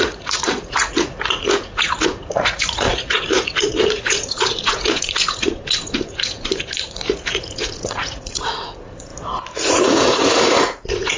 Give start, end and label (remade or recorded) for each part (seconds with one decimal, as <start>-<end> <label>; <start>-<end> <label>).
0.0-9.1 remade; 9.1-9.7 recorded; 9.7-11.2 remade